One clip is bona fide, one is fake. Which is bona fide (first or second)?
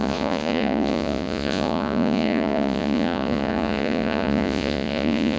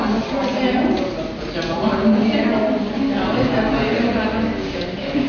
second